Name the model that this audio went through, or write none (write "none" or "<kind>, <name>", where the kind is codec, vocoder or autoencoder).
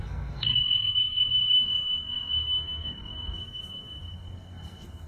codec, SNAC